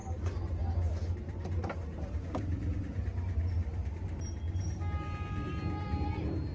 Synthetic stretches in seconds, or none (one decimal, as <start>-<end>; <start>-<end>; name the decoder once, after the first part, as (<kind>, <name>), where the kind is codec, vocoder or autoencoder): none